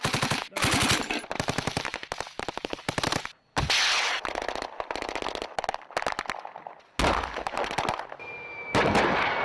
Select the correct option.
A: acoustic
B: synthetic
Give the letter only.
A